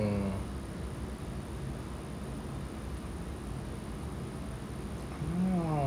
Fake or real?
real